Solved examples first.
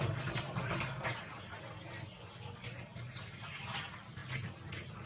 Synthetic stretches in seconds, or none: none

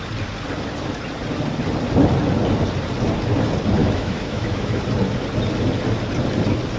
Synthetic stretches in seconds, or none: 3.8-4.8 (autoencoder, DAC-VAE)

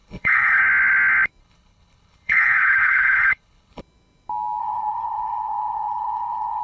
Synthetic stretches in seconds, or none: 0.0-0.6 (codec, HILCodec); 1.4-3.8; 4.6-6.6